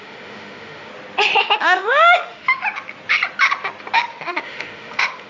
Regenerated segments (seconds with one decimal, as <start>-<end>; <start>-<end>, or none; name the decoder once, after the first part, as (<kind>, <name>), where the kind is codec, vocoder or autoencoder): 0.0-0.9 (autoencoder, DAC-VAE); 1.4-2.6; 4.1-5.3